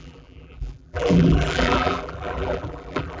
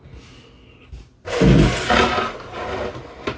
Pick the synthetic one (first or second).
first